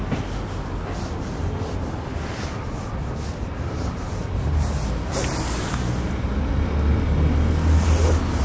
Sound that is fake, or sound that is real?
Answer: real